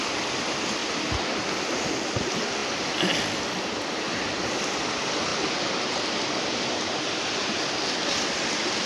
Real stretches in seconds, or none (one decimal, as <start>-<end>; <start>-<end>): 0.0-8.9